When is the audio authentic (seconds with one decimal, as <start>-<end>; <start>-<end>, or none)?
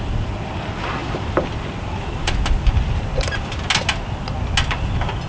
0.0-1.0; 3.7-5.3